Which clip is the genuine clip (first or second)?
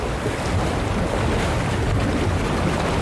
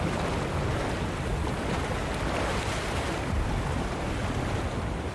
first